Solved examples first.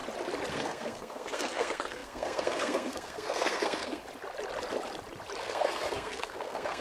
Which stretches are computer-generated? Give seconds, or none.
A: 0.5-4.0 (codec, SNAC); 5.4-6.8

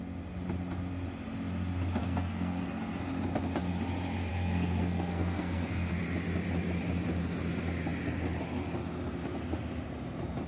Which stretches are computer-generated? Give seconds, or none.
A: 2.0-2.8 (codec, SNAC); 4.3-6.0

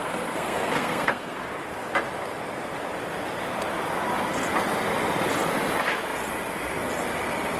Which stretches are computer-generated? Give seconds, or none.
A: 0.0-1.4 (codec, SNAC)